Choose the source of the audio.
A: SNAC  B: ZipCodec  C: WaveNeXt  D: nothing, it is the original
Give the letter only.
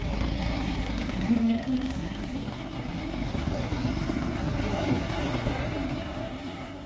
A